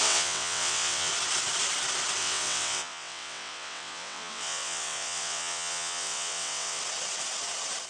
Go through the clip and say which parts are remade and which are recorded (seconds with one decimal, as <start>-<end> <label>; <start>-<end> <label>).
0.0-1.1 remade; 1.1-2.2 recorded; 2.2-6.8 remade; 6.8-7.9 recorded